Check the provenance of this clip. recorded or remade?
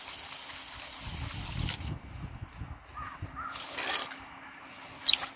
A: recorded